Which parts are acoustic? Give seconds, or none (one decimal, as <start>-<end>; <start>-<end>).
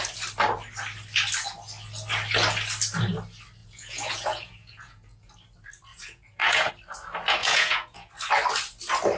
0.0-3.6; 5.3-5.9; 6.7-7.4; 8.1-9.2